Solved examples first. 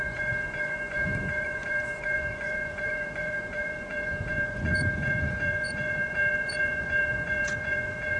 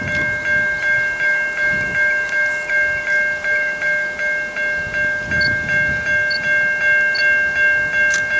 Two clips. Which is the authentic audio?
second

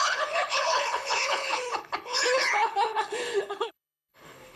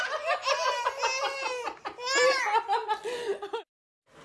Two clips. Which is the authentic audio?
second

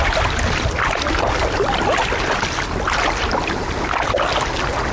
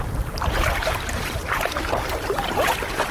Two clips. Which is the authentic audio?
first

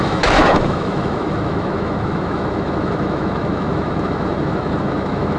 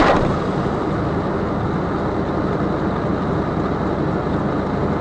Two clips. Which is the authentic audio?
second